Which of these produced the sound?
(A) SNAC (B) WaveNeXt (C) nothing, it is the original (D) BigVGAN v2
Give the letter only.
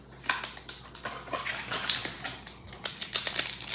C